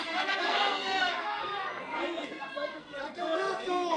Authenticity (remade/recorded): remade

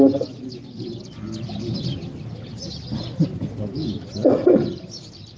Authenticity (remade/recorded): recorded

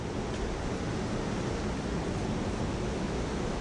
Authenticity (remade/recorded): recorded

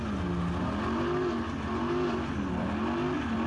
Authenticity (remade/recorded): recorded